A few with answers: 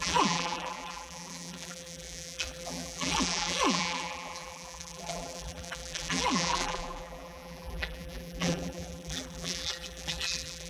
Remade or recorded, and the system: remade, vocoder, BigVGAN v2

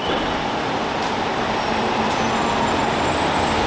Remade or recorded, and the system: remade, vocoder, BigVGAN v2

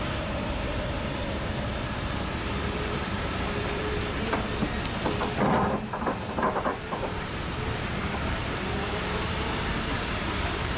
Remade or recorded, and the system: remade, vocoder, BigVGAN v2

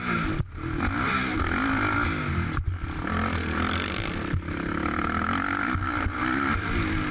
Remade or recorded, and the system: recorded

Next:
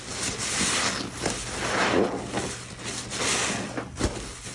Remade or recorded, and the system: recorded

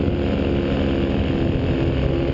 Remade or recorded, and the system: recorded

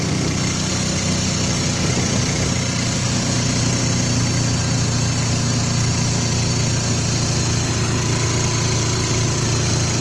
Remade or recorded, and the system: recorded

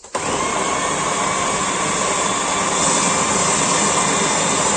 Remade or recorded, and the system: recorded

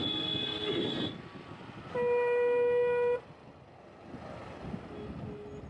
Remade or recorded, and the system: recorded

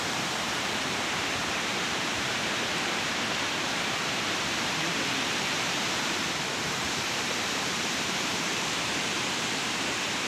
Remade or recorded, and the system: remade, vocoder, BigVGAN v2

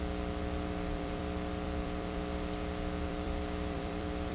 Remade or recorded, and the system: remade, vocoder, BigVGAN v2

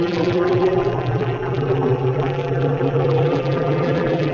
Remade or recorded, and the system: remade, vocoder, BigVGAN v2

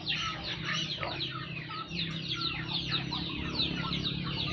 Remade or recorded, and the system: remade, vocoder, BigVGAN v2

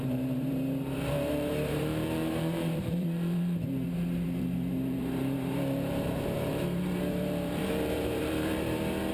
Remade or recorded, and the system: remade, vocoder, BigVGAN v2